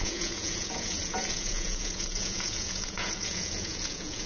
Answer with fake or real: fake